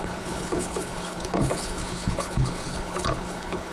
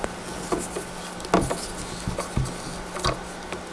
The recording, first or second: second